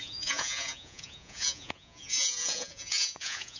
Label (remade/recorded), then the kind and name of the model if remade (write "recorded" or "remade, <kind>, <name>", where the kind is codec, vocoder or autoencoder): remade, vocoder, Vocos